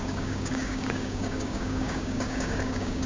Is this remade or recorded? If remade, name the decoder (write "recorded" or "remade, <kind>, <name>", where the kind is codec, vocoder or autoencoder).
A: remade, codec, DAC